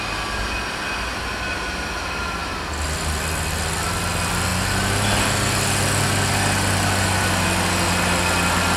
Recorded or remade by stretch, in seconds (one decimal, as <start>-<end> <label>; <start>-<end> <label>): 0.0-8.8 recorded